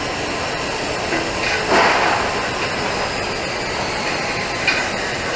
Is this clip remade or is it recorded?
recorded